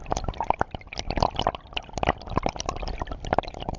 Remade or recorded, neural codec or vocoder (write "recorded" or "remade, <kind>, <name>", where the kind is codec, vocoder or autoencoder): remade, vocoder, BigVGAN v2